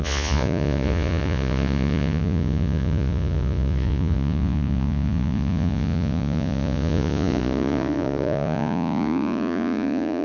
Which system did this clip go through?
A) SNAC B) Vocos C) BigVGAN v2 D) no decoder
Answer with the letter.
B